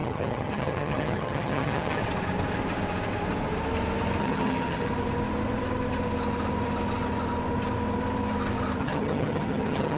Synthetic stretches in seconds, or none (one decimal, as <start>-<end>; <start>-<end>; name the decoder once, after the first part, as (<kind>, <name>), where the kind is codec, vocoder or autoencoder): 0.0-2.0 (vocoder, HiFi-GAN); 4.2-4.9; 8.8-10.0